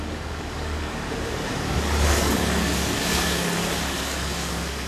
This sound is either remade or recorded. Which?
remade